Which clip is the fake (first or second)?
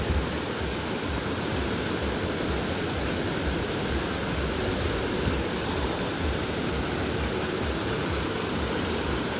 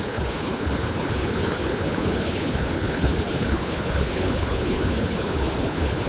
second